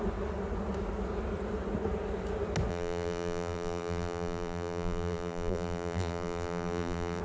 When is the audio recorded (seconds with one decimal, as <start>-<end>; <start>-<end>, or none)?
0.0-2.7